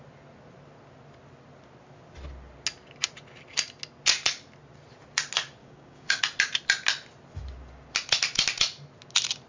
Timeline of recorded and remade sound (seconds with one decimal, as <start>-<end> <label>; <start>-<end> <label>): 0.0-5.6 recorded; 5.6-6.2 remade; 6.2-9.5 recorded